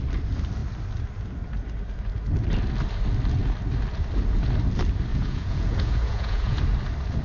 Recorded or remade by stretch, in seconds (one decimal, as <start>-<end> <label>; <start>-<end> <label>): 0.0-5.1 recorded; 5.1-6.6 remade; 6.6-7.2 recorded